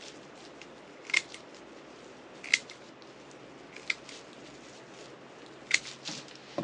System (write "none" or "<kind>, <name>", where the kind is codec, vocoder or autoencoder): none